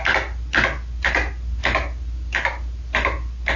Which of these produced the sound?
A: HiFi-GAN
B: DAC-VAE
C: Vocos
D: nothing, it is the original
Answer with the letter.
D